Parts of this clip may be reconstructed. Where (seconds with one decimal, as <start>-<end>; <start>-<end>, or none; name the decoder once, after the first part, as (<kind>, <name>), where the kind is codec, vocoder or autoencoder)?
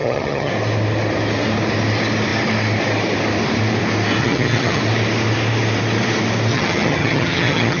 0.0-0.5 (vocoder, HiFi-GAN); 4.2-4.8; 6.5-7.8